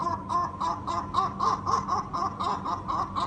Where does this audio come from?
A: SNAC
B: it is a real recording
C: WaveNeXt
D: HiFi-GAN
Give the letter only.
B